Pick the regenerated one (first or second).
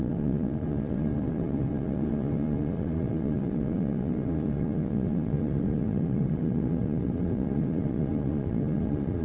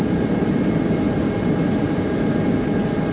first